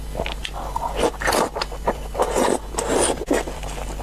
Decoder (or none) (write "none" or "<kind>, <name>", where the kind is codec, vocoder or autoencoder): none